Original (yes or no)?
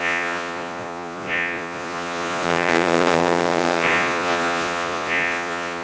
no